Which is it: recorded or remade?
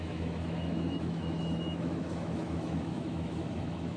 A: remade